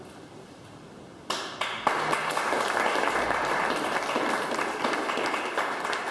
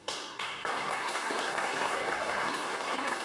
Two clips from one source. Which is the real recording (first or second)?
first